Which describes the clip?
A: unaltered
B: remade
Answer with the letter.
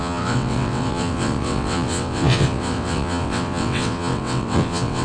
B